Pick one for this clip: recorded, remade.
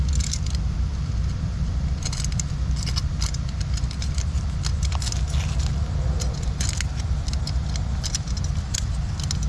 recorded